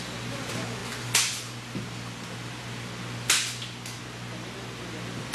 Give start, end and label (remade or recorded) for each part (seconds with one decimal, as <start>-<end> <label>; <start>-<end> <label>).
0.0-5.3 recorded